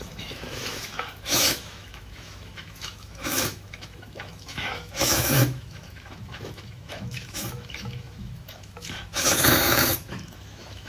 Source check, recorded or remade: remade